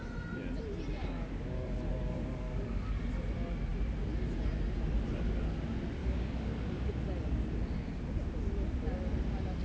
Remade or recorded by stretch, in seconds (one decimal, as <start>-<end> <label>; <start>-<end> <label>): 0.0-1.0 recorded; 1.0-3.0 remade; 3.0-6.0 recorded; 6.0-6.9 remade; 6.9-9.6 recorded